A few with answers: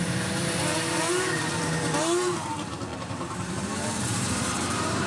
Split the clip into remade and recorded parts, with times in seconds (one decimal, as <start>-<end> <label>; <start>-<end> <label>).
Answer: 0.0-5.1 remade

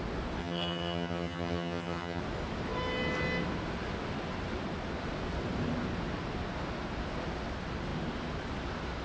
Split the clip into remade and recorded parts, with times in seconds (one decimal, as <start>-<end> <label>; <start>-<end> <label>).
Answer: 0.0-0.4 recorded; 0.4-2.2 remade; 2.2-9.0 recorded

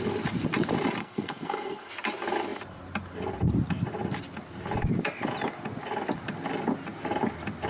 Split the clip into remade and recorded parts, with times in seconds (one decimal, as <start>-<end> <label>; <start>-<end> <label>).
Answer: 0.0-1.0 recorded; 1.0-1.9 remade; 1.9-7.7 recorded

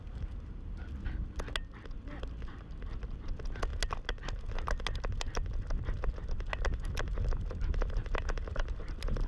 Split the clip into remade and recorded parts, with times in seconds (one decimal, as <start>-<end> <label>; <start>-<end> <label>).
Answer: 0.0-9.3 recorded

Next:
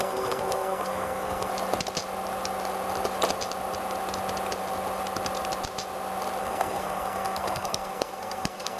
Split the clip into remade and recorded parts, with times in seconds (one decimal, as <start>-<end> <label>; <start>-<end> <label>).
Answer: 0.0-1.5 remade; 1.5-6.4 recorded; 6.4-8.8 remade

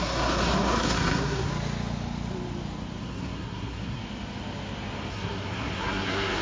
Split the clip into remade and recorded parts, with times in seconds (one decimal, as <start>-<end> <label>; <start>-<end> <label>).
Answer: 0.0-1.5 remade; 1.5-3.0 recorded; 3.0-4.0 remade; 4.0-5.1 recorded; 5.1-6.4 remade